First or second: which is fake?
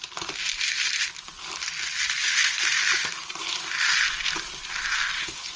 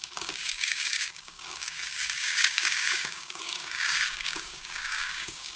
second